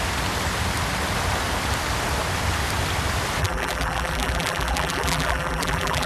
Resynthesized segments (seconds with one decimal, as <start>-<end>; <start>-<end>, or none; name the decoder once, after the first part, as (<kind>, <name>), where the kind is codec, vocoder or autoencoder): 3.4-6.1 (vocoder, BigVGAN v2)